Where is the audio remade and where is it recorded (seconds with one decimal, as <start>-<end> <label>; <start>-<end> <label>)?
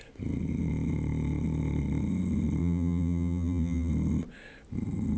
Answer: 0.0-2.6 recorded; 2.6-3.9 remade; 3.9-5.2 recorded